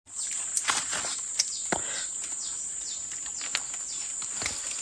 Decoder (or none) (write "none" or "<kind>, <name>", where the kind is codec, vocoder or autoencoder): none